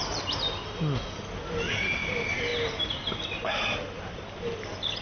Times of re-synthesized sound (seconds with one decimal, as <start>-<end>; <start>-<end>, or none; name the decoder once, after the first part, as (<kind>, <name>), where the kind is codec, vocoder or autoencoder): none

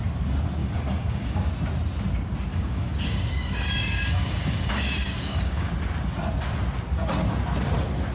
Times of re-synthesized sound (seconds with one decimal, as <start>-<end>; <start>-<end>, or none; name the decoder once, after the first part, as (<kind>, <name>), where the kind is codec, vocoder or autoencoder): 0.6-1.5 (codec, DAC); 2.5-5.7